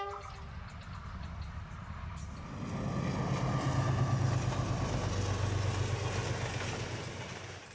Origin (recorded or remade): recorded